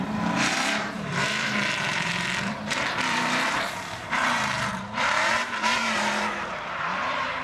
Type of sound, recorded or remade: remade